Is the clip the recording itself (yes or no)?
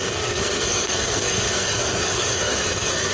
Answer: no